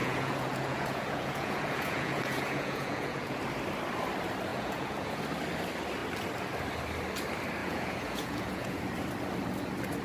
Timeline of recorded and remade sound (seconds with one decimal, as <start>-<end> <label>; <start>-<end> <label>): 0.0-3.4 remade; 3.4-4.5 recorded; 4.5-5.2 remade; 5.2-7.6 recorded; 7.6-8.8 remade; 8.8-10.0 recorded